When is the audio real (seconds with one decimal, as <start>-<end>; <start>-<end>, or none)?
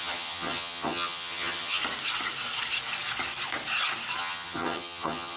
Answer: 1.8-4.2